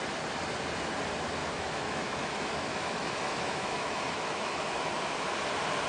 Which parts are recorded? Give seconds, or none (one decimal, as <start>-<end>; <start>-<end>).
0.0-1.4; 4.9-5.9